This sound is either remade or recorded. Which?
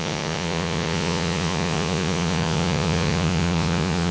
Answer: remade